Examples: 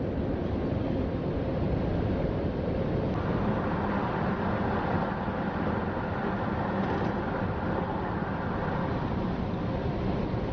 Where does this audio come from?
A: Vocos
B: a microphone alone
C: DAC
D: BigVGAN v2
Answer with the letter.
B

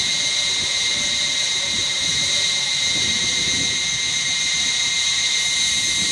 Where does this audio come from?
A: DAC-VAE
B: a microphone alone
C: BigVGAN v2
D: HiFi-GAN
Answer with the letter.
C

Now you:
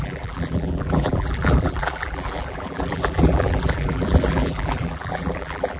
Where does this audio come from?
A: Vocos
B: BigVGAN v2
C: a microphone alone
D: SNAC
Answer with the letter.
B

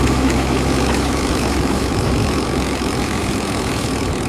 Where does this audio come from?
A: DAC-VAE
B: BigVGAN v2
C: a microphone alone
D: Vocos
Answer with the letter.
A